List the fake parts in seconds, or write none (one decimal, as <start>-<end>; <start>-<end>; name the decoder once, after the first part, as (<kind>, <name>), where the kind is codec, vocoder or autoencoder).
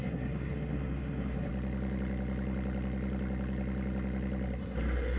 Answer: 0.0-1.5 (codec, SNAC); 4.6-5.2